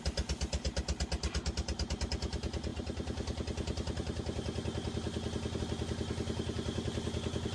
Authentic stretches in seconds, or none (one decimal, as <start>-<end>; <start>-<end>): 0.0-7.5